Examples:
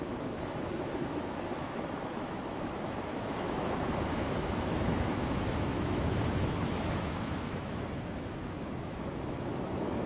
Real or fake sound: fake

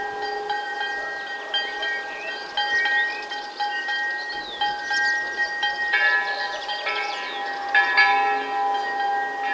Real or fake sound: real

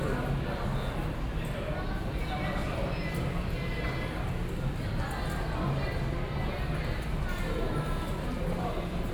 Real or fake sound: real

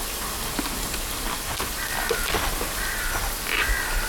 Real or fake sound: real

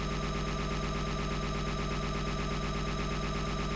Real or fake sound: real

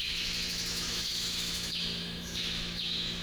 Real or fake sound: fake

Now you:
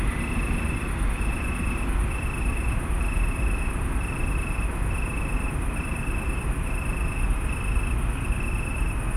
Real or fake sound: real